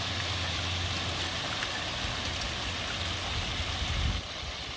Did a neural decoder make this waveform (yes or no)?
no